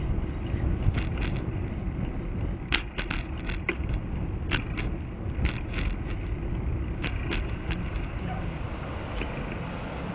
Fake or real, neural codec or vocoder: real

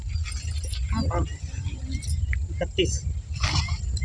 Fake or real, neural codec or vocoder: real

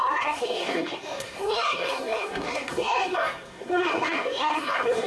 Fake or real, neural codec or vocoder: fake, codec, SNAC